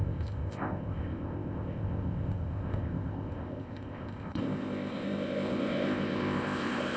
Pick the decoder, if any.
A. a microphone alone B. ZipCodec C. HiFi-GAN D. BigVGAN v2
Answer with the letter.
B